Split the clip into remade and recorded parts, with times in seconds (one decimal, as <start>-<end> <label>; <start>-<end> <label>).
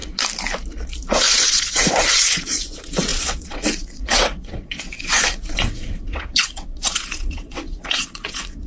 0.0-1.1 recorded; 1.1-8.7 remade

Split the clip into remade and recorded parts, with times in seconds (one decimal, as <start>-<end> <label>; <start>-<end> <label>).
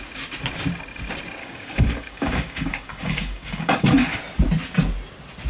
0.0-1.4 recorded; 1.4-4.2 remade; 4.2-5.5 recorded